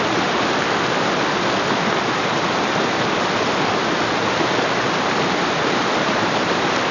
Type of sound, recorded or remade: recorded